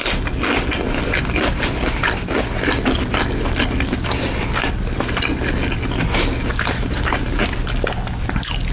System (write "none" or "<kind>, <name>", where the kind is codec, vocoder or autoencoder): none